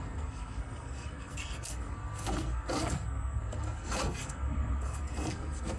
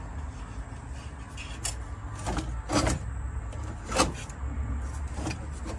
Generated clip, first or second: first